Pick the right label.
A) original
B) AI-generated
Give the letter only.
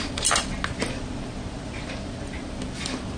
A